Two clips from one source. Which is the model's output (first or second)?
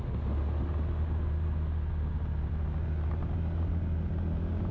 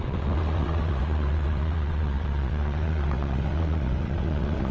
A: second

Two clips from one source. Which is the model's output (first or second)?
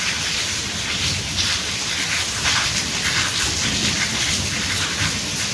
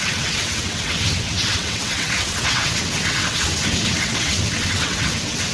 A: second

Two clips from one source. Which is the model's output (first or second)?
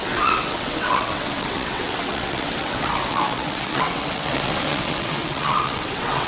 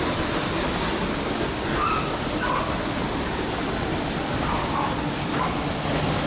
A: first